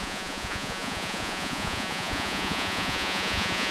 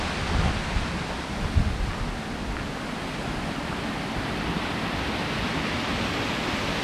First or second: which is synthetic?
first